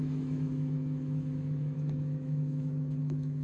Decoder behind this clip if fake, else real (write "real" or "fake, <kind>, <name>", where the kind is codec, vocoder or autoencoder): fake, autoencoder, DAC-VAE